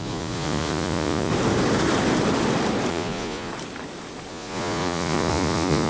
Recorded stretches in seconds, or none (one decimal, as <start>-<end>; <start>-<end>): 1.3-2.9; 3.5-4.3